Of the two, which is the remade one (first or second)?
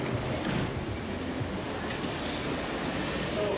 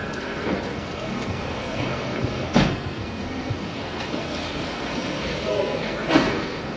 second